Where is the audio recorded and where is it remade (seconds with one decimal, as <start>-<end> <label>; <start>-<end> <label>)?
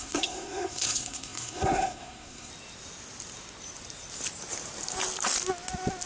0.0-2.5 remade; 2.5-6.1 recorded